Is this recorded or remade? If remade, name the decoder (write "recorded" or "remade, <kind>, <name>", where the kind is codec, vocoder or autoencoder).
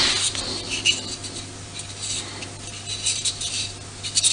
recorded